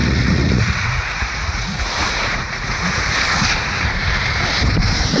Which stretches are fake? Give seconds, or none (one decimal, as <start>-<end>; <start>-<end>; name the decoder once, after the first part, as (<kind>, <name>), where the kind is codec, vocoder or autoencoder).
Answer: 0.0-3.1 (vocoder, Vocos)